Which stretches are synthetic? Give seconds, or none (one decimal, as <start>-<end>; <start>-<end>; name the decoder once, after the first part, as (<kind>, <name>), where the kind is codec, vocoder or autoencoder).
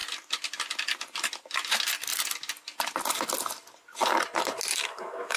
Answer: 4.7-5.4 (autoencoder, DAC-VAE)